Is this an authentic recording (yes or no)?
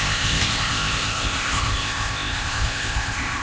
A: no